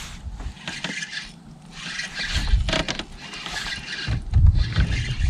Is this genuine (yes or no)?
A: yes